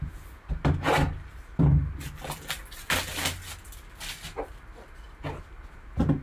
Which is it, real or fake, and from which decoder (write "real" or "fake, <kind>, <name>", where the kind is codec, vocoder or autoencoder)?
real